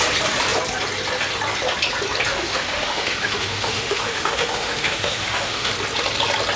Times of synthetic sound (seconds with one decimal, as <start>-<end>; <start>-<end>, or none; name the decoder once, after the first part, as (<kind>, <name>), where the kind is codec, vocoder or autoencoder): 2.3-5.7 (autoencoder, DAC-VAE)